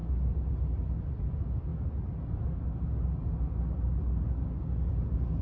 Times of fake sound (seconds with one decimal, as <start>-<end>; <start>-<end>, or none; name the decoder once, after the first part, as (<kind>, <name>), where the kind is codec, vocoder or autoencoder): none